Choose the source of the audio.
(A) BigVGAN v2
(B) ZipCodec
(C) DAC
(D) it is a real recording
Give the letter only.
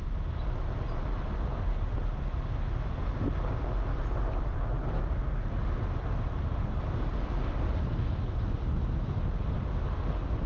D